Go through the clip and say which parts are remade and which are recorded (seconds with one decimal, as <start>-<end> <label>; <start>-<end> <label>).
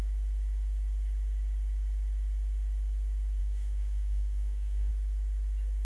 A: 0.0-3.4 recorded; 3.4-4.9 remade; 4.9-5.8 recorded